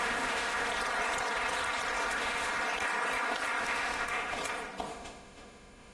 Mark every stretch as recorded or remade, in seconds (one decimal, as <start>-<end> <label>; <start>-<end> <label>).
0.0-0.7 remade; 0.7-2.1 recorded; 2.1-2.5 remade; 2.5-3.6 recorded; 3.6-4.4 remade; 4.4-4.9 recorded; 4.9-5.9 remade

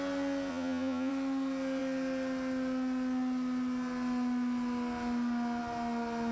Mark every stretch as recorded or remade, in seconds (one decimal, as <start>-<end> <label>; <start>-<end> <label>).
0.0-0.5 recorded; 0.5-1.1 remade; 1.1-6.3 recorded

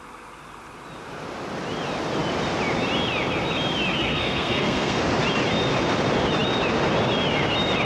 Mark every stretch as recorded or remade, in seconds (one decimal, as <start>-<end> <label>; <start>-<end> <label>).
0.0-4.0 recorded; 4.0-5.0 remade; 5.0-7.8 recorded

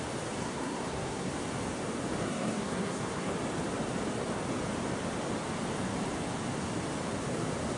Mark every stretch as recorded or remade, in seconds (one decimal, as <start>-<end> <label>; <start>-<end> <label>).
0.0-0.4 recorded; 0.4-1.3 remade; 1.3-2.2 recorded; 2.2-3.3 remade; 3.3-7.8 recorded

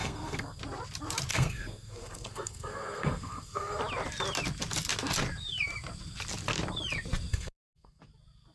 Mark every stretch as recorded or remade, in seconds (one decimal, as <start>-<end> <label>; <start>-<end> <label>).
0.0-0.6 remade; 0.6-1.3 recorded; 1.3-3.8 remade; 3.8-7.3 recorded; 7.3-8.0 remade; 8.0-8.5 recorded